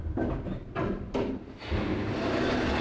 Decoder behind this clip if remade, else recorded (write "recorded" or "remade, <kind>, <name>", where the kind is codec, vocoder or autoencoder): recorded